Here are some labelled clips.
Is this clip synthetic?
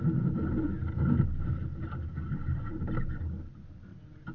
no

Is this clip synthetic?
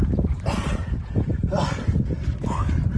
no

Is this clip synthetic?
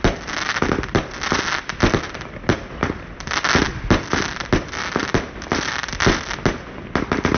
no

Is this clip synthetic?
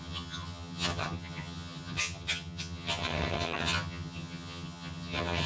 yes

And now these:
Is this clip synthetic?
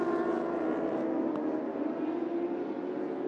no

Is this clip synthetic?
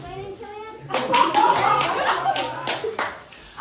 no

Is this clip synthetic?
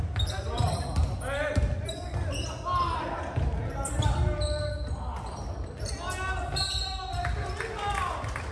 no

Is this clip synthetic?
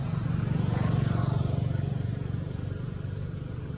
no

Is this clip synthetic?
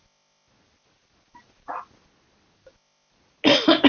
no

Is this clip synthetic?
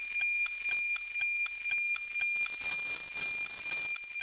no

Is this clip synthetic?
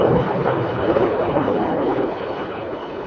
yes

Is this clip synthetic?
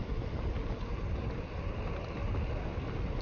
no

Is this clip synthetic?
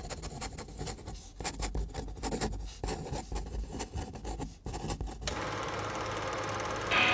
no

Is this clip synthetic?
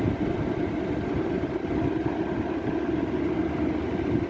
no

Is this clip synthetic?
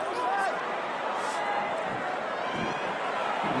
no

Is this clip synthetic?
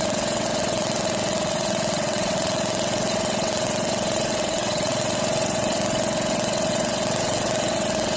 yes